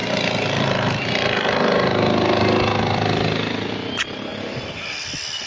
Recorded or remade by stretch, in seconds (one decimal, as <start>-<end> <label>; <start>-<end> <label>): 0.0-5.5 recorded